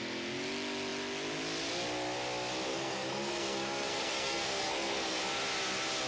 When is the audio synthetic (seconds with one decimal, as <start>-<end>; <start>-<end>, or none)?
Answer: 2.7-5.2